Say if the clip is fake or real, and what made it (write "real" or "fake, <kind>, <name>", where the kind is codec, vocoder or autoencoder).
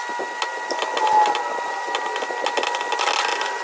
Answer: real